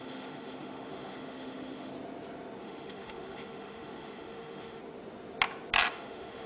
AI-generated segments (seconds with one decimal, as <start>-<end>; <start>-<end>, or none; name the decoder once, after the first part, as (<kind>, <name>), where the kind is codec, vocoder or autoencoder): 0.0-1.9 (autoencoder, DAC-VAE); 2.6-4.8; 5.9-6.5